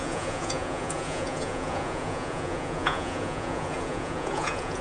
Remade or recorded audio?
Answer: remade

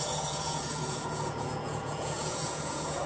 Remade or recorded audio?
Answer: remade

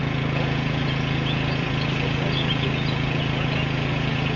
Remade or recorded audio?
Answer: remade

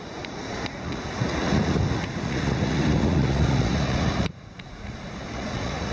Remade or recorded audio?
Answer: remade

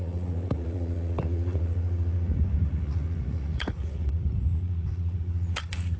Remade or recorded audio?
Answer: remade